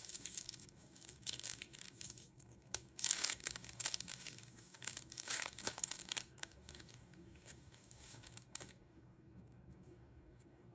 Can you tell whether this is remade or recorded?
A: remade